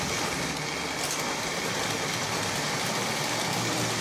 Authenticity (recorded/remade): recorded